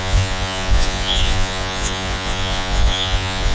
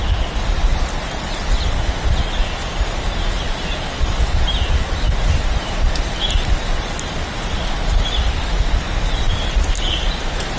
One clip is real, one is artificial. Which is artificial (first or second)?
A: first